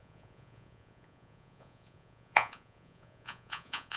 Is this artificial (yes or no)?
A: yes